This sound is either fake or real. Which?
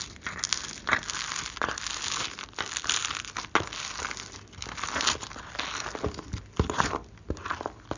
real